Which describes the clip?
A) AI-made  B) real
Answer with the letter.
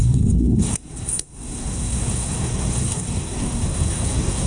A